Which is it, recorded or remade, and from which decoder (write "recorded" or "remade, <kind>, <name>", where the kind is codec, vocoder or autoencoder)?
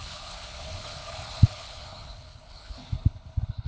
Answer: remade, codec, HILCodec